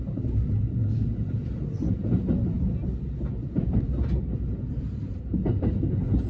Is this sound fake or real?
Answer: real